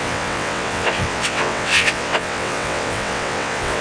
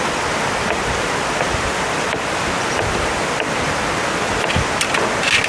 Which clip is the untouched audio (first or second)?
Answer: second